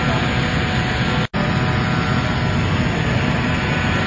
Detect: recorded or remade recorded